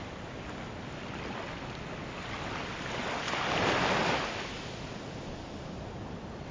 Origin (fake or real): real